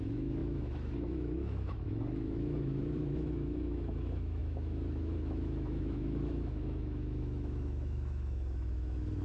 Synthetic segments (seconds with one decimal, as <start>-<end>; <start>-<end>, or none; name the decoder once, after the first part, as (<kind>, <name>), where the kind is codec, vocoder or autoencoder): 0.0-9.2 (autoencoder, DAC-VAE)